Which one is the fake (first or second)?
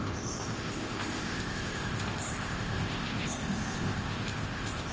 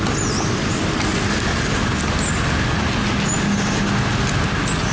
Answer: first